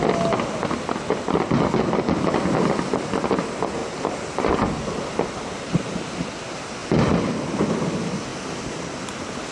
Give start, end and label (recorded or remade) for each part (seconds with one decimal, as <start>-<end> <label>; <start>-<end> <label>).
0.0-9.5 recorded